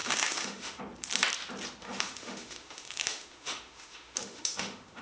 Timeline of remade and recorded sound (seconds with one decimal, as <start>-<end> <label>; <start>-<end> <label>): 0.0-0.8 remade; 0.8-1.8 recorded; 1.8-5.0 remade